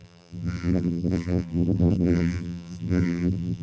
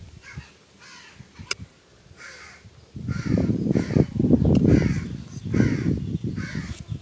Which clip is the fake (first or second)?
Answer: first